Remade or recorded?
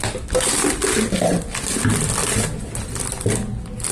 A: recorded